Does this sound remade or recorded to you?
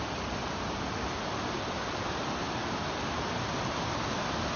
recorded